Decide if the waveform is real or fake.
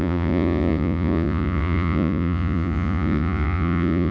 fake